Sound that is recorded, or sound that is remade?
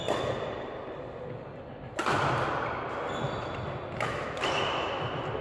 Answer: recorded